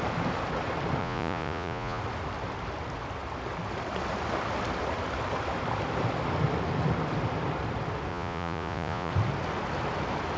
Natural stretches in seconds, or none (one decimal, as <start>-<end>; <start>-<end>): 0.0-1.0; 2.0-8.1; 9.1-10.4